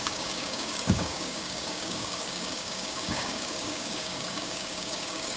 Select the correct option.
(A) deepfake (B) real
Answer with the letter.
A